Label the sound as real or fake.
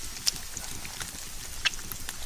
real